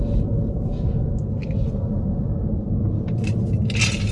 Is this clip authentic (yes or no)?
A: yes